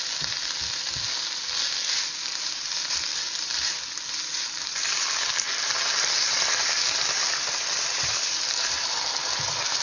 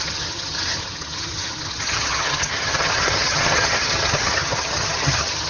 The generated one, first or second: second